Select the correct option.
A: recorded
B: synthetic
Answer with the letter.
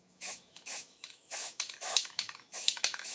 B